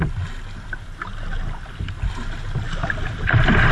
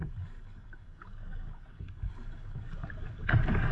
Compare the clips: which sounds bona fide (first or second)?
first